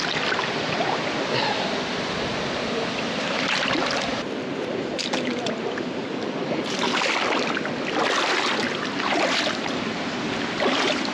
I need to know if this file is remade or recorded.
remade